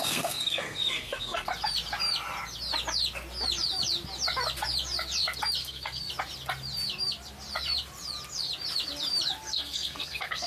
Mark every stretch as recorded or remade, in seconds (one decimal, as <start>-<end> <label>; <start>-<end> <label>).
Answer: 0.0-1.5 remade; 1.5-5.6 recorded; 5.6-6.1 remade; 6.1-9.5 recorded; 9.5-10.5 remade